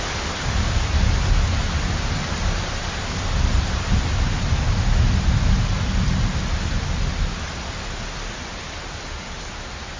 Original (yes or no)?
yes